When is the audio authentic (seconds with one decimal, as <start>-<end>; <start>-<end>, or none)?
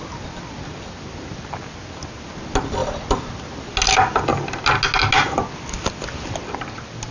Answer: 0.0-7.1